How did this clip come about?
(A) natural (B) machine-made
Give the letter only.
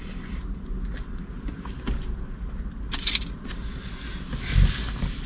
A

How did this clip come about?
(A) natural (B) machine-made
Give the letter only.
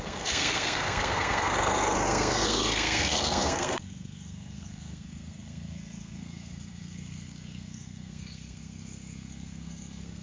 B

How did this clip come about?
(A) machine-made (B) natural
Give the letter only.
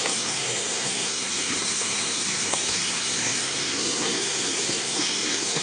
A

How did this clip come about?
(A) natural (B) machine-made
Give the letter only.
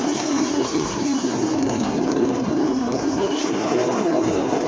B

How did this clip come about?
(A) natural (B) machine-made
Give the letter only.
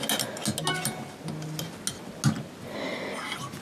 A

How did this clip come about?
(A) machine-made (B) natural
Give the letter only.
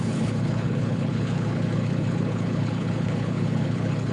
A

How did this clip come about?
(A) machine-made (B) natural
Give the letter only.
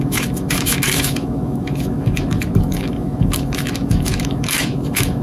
A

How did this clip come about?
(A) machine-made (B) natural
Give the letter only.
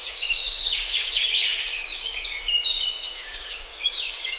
A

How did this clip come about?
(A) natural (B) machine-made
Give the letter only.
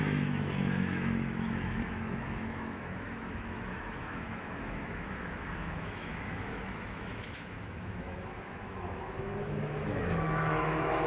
B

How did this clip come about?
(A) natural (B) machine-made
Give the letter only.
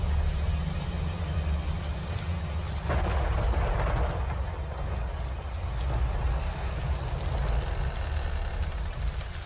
A